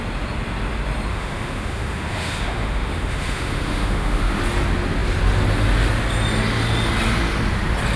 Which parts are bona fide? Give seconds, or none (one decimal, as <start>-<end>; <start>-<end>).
0.0-1.1; 4.4-8.0